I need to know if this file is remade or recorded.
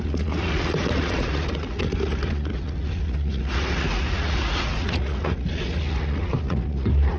remade